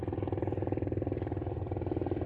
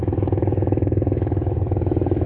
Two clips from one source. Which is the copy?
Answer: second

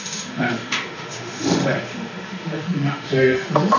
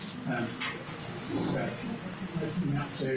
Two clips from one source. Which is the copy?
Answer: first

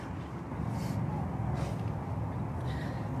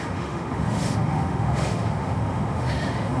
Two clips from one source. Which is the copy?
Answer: second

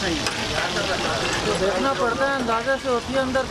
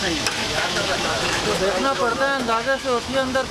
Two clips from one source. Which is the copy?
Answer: second